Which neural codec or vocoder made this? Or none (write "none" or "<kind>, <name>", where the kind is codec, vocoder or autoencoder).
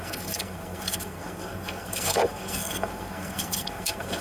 codec, SNAC